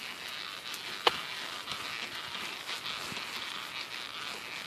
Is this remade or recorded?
recorded